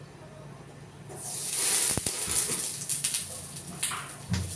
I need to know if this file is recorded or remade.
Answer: recorded